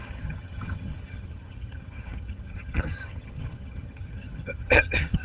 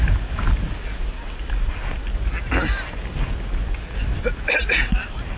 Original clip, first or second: second